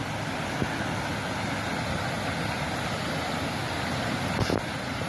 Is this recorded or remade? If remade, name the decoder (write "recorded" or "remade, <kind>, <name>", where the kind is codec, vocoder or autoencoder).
recorded